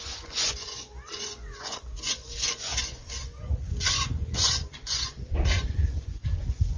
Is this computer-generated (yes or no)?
yes